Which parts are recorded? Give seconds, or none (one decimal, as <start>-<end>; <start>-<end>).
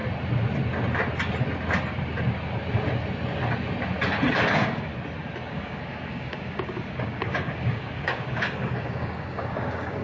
0.0-4.3; 4.9-5.5